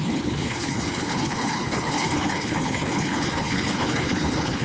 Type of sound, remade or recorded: remade